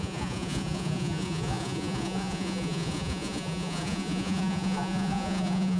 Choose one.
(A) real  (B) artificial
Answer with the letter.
B